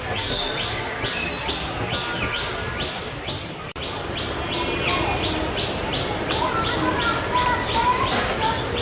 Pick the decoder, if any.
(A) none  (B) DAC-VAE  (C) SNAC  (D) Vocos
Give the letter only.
A